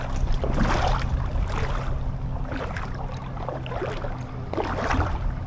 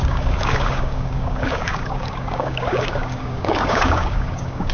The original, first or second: first